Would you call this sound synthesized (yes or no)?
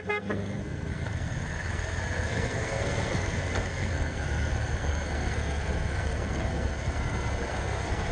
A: yes